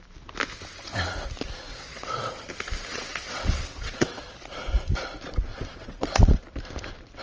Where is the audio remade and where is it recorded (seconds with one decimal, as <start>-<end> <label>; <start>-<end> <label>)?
0.0-1.7 recorded; 1.7-2.5 remade; 2.5-2.9 recorded; 2.9-4.2 remade; 4.2-5.5 recorded; 5.5-6.4 remade; 6.4-7.2 recorded